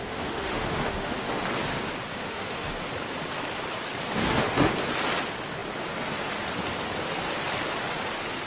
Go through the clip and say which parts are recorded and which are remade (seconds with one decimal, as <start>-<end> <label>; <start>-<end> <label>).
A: 0.0-1.4 remade; 1.4-2.1 recorded; 2.1-2.7 remade; 2.7-4.2 recorded; 4.2-4.7 remade; 4.7-8.5 recorded